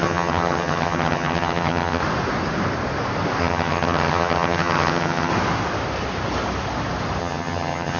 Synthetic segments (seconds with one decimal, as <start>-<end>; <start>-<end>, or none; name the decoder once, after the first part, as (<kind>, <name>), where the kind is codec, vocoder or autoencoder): 0.0-2.0 (vocoder, HiFi-GAN); 3.4-5.3; 7.2-8.0